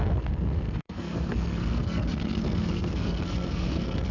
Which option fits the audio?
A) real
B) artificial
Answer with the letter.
B